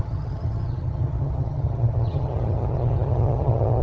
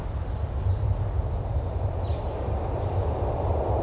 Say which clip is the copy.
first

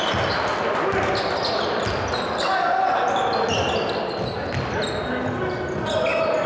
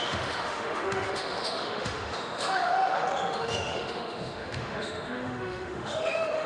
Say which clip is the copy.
second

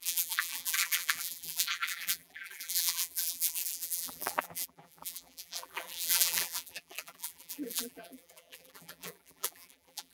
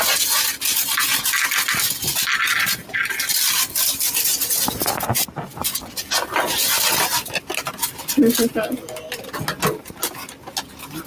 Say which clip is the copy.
first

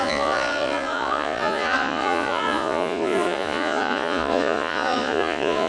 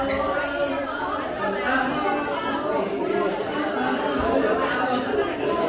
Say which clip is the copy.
first